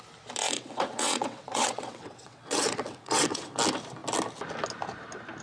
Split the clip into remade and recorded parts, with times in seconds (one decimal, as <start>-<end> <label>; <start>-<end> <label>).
0.0-0.4 recorded; 0.4-3.6 remade; 3.6-5.4 recorded